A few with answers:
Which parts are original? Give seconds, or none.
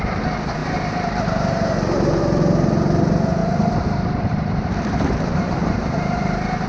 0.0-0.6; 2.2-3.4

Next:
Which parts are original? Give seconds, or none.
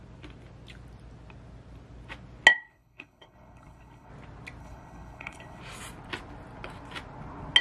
0.0-2.5; 4.1-4.6; 5.6-7.6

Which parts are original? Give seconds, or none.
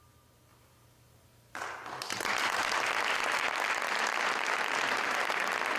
0.0-0.5; 2.2-5.8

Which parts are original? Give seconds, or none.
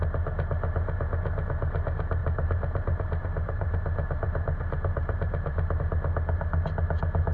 0.0-2.2; 5.8-7.3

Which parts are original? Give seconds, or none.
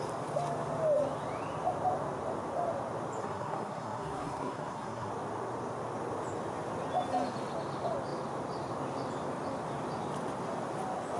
0.0-3.2; 5.1-11.2